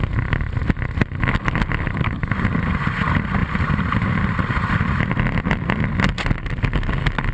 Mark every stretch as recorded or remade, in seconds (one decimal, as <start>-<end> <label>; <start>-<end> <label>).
0.0-3.4 recorded; 3.4-5.1 remade; 5.1-7.3 recorded